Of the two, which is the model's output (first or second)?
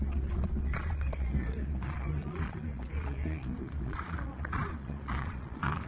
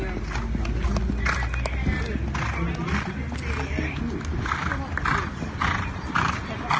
first